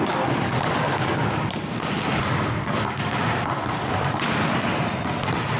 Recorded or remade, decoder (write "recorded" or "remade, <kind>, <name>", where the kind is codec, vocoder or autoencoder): recorded